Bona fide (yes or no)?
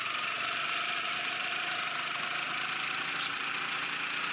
yes